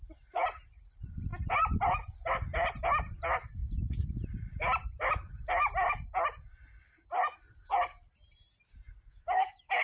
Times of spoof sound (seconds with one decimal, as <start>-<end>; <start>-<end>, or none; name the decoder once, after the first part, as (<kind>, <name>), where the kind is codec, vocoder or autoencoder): 9.1-9.8 (autoencoder, DAC-VAE)